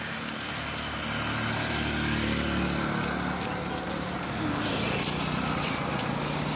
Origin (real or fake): real